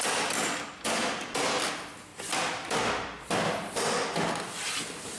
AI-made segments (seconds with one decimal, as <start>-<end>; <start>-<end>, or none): none